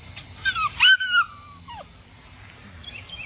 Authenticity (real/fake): real